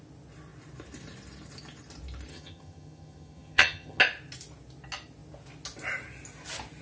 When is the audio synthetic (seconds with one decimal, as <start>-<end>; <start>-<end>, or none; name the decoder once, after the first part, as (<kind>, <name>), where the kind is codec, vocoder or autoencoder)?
2.3-4.0 (vocoder, HiFi-GAN)